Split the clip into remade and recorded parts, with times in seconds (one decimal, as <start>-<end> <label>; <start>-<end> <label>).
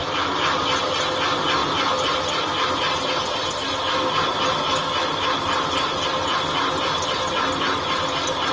0.0-8.5 recorded